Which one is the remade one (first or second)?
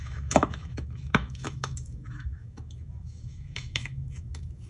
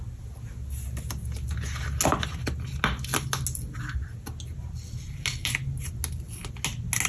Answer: first